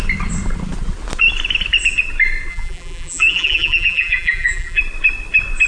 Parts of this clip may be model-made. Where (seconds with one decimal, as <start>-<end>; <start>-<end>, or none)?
2.5-4.8